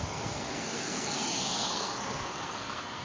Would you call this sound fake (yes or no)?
yes